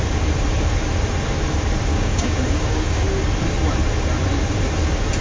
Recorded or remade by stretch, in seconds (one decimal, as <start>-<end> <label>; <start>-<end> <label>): 0.0-1.9 recorded; 1.9-3.0 remade; 3.0-5.2 recorded